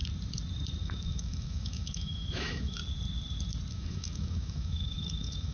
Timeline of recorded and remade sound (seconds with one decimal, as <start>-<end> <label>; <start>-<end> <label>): 0.0-0.8 recorded; 0.8-2.8 remade; 2.8-3.7 recorded; 3.7-5.5 remade